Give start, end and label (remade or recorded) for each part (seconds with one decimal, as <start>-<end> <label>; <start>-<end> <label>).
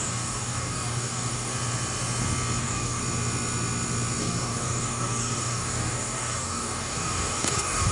0.0-1.5 remade; 1.5-2.6 recorded; 2.6-3.0 remade; 3.0-4.2 recorded; 4.2-7.9 remade